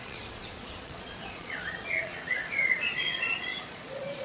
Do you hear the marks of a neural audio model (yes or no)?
yes